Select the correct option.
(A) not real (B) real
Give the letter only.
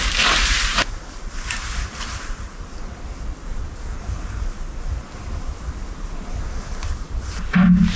B